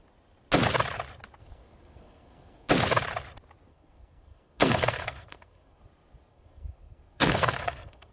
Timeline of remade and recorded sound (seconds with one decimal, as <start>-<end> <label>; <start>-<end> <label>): 0.0-1.4 recorded; 1.4-2.7 remade; 2.7-3.7 recorded; 3.7-5.8 remade; 5.8-6.3 recorded; 6.3-8.1 remade